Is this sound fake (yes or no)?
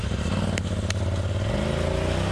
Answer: no